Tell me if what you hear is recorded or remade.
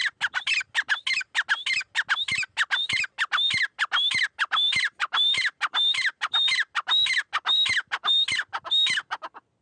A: recorded